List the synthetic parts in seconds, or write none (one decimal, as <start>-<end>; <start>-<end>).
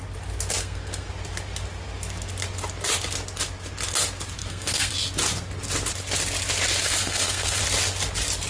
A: 0.6-1.1; 4.4-4.9; 6.8-7.6